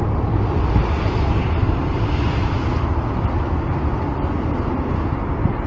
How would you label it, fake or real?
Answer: real